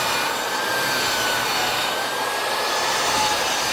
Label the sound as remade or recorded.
remade